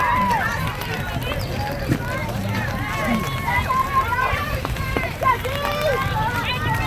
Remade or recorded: remade